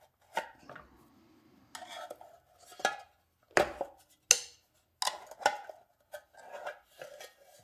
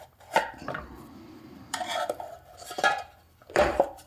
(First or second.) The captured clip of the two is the first